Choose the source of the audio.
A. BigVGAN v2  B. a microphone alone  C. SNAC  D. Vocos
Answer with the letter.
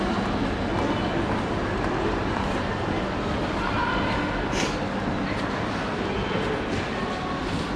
B